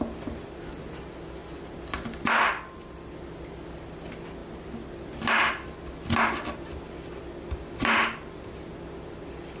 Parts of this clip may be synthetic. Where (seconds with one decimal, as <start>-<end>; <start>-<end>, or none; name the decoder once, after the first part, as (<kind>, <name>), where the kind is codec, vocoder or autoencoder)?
none